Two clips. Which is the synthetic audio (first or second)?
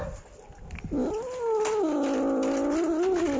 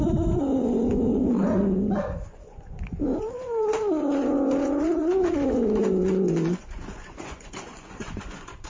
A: second